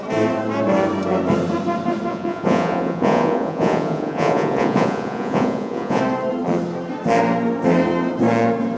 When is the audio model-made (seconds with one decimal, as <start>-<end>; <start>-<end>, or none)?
2.1-6.0